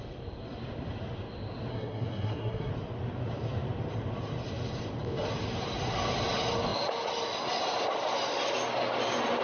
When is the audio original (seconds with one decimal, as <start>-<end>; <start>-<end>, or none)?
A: 0.0-1.7; 2.7-9.4